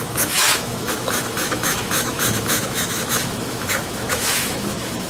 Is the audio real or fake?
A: fake